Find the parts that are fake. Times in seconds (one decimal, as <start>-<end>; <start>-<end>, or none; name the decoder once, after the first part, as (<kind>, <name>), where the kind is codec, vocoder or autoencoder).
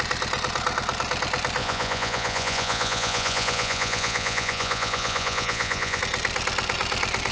1.6-6.0 (vocoder, Vocos)